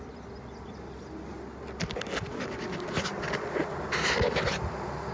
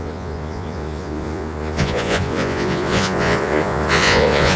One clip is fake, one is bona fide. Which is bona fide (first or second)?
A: first